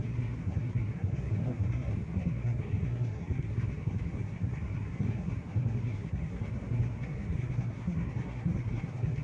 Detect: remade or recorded remade